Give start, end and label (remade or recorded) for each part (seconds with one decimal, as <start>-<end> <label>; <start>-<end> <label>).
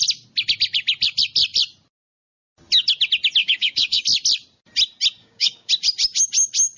0.0-3.4 recorded; 3.4-4.0 remade; 4.0-5.2 recorded; 5.2-5.7 remade; 5.7-6.8 recorded